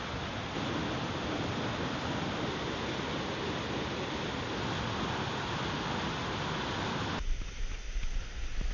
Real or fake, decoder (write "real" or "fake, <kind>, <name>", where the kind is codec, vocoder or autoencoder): real